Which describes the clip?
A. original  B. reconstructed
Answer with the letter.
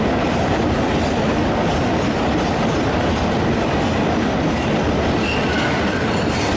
A